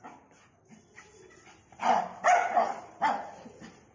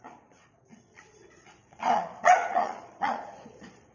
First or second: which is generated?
second